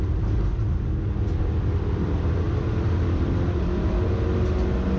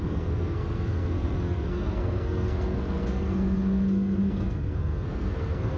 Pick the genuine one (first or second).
first